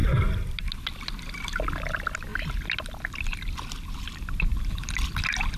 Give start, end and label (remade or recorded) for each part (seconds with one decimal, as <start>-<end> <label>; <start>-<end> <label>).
0.0-5.6 recorded

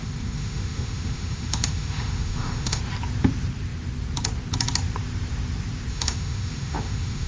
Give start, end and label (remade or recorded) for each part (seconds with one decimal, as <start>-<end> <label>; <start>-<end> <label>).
0.0-2.8 remade; 2.8-5.9 recorded; 5.9-7.3 remade

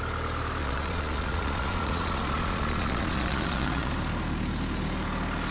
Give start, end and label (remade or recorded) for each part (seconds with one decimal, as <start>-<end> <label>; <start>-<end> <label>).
0.0-0.6 recorded; 0.6-3.9 remade; 3.9-5.5 recorded

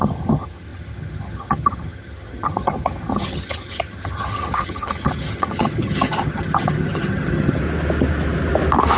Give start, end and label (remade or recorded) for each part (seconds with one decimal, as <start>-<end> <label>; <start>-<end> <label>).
0.0-7.6 remade; 7.6-9.0 recorded

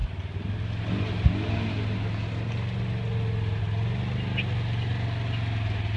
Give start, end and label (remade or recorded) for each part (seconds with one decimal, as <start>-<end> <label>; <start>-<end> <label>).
0.0-6.0 recorded

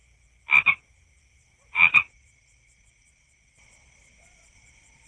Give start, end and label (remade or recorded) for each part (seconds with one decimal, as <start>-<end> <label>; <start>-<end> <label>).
0.0-1.7 recorded; 1.7-5.1 remade

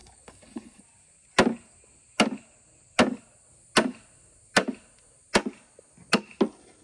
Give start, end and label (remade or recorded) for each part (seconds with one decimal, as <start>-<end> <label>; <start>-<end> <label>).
0.0-0.8 remade; 0.8-6.8 recorded

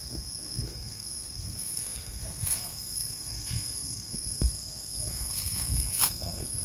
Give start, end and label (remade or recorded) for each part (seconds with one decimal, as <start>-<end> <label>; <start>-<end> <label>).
0.0-6.6 remade